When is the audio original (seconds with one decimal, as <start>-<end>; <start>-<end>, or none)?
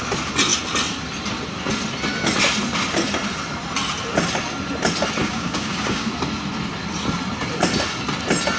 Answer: 0.0-5.2; 6.1-8.6